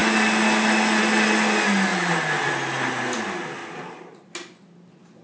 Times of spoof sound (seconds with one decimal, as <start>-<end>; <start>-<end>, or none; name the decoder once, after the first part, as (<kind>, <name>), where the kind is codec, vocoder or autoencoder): 1.9-2.5 (vocoder, BigVGAN v2); 3.6-4.3